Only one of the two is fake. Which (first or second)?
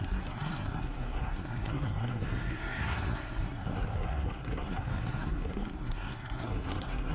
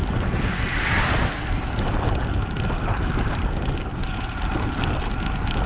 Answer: first